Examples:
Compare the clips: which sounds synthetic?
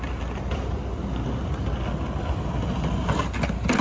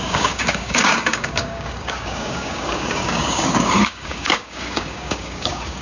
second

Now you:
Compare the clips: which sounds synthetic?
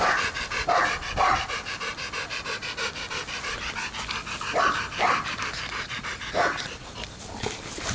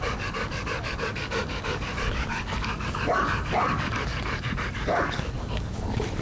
second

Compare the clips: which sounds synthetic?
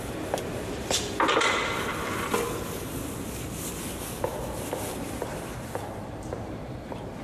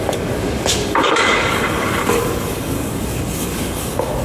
second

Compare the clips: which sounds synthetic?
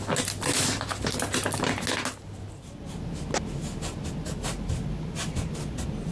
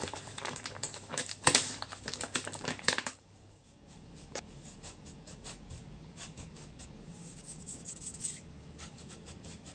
second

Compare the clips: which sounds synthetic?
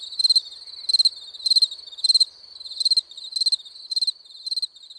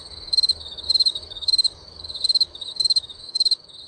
second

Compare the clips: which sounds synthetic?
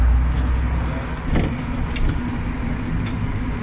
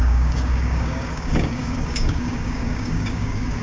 second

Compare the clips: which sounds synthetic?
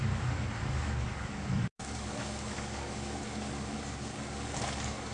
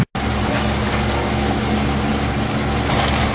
first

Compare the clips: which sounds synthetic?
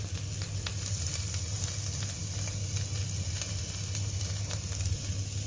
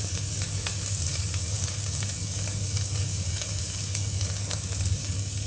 second